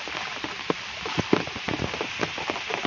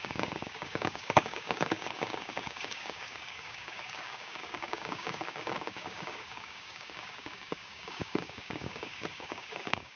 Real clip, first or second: first